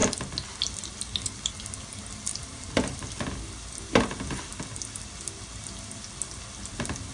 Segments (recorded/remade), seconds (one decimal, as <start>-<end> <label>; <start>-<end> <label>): 0.0-2.3 recorded; 2.3-3.2 remade; 3.2-7.1 recorded